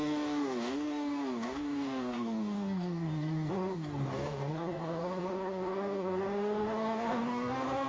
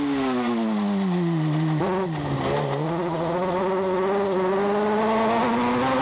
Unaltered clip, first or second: second